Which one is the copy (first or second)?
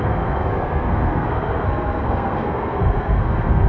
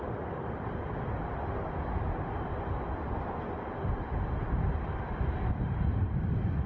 first